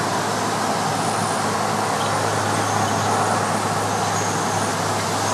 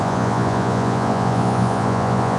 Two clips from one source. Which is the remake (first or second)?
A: second